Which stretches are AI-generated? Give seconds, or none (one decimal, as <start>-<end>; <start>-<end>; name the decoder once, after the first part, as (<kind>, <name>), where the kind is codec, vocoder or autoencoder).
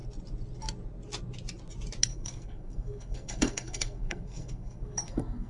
2.1-5.5 (codec, SNAC)